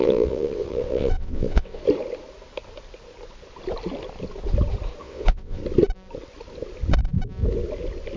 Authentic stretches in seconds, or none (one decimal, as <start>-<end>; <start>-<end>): 1.8-5.0; 5.6-8.2